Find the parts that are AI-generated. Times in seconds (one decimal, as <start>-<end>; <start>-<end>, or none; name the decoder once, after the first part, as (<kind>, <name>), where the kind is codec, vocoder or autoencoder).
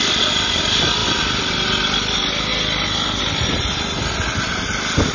none